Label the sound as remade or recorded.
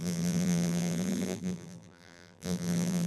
remade